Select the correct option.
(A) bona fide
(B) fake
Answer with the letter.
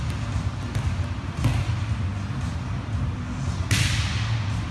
A